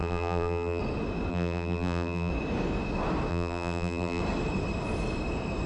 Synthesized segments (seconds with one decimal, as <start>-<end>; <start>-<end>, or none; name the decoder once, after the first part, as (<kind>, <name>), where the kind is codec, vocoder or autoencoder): 0.0-0.8 (vocoder, BigVGAN v2); 1.3-2.3; 3.3-4.2